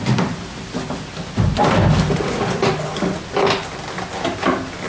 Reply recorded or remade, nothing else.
recorded